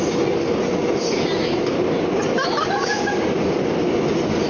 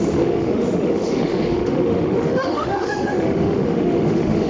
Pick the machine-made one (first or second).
second